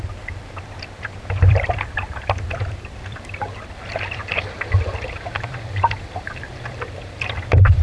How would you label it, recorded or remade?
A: remade